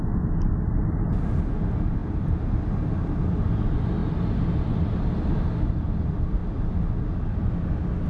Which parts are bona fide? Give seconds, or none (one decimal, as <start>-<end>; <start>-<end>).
0.0-2.0; 2.7-6.4; 7.5-8.1